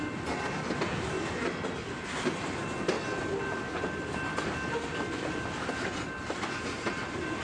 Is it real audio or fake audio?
real